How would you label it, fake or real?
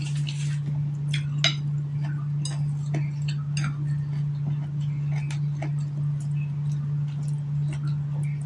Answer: real